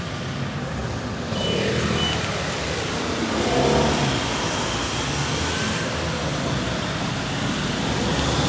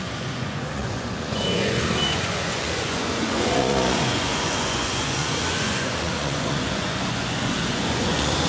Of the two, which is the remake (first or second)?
second